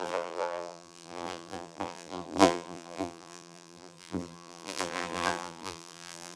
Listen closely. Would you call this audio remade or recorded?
remade